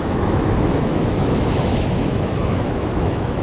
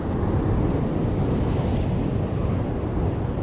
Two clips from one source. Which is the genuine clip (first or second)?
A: second